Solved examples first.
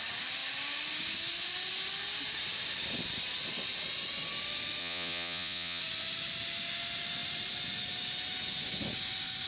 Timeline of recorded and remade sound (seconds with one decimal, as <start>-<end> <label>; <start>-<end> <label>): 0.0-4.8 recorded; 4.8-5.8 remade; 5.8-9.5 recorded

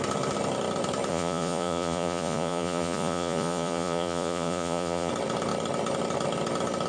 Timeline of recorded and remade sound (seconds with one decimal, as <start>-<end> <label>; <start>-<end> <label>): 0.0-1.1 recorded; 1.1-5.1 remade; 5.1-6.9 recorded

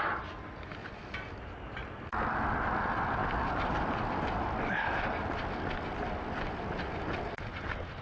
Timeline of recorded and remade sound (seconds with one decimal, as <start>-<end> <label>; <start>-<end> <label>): 0.0-8.0 recorded

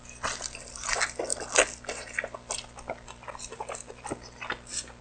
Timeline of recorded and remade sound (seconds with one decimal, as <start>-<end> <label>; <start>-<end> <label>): 0.0-5.0 recorded

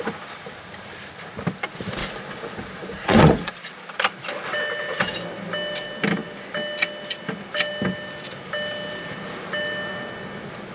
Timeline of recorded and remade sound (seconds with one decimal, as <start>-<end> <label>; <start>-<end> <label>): 0.0-2.0 recorded; 2.0-3.5 remade; 3.5-10.7 recorded

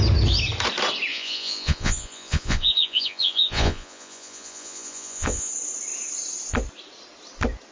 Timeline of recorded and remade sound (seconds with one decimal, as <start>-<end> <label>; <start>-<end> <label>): 0.0-1.1 recorded; 1.1-5.5 remade; 5.5-7.7 recorded